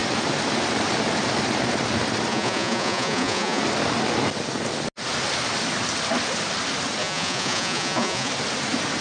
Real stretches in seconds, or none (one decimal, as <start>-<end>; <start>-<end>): 0.0-2.3; 3.6-7.0; 8.3-9.0